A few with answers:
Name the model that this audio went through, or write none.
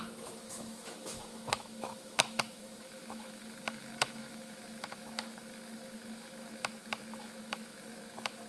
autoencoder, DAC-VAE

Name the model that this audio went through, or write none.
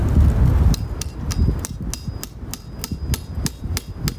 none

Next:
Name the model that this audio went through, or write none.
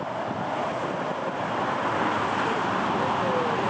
none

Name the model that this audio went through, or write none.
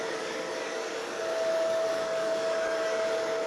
codec, DAC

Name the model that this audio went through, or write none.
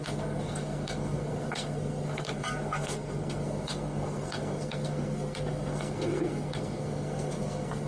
codec, SNAC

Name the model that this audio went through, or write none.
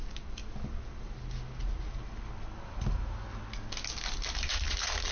none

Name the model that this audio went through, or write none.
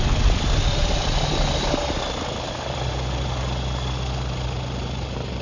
none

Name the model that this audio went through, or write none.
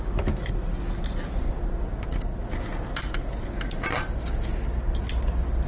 none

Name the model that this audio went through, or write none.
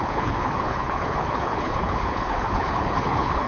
codec, HILCodec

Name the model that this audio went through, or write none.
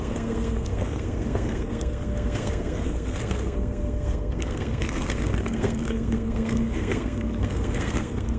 codec, SNAC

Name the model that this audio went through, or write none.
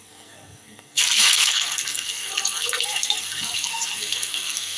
codec, SNAC